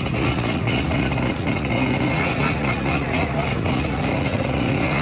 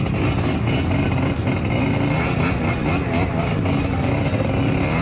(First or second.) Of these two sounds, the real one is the second